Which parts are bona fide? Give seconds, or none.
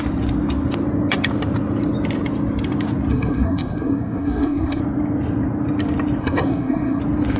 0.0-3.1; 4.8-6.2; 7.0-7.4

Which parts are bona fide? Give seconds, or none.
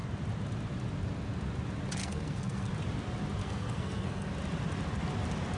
0.0-2.0; 2.7-3.4; 4.3-5.6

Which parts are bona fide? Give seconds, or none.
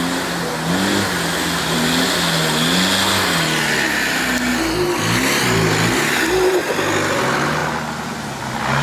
0.0-8.8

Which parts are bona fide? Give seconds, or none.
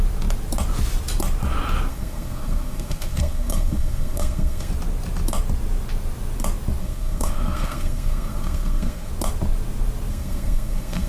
0.0-1.9; 4.7-6.8; 9.1-10.1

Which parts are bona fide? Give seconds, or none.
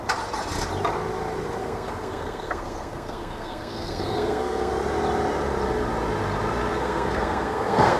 0.0-1.6; 4.7-6.8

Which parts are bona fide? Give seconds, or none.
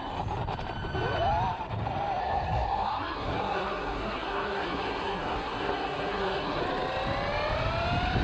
0.0-2.2; 6.6-8.2